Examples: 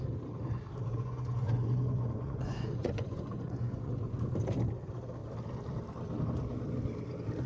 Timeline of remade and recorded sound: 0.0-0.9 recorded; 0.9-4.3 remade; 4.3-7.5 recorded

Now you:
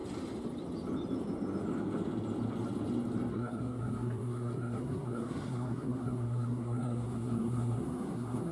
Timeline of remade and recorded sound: 0.0-3.3 recorded; 3.3-8.5 remade

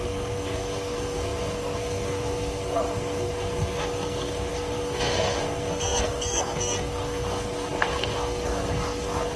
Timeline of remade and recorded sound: 0.0-9.4 remade

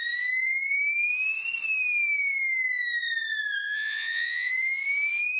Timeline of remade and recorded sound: 0.0-3.6 recorded; 3.6-4.5 remade; 4.5-5.4 recorded

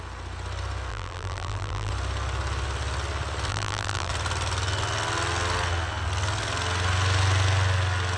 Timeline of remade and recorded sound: 0.0-0.9 recorded; 0.9-1.9 remade; 1.9-3.5 recorded; 3.5-4.1 remade; 4.1-8.2 recorded

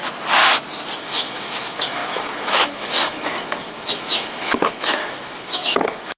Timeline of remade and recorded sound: 0.0-1.0 recorded; 1.0-6.2 remade